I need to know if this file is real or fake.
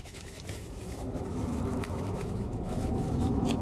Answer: fake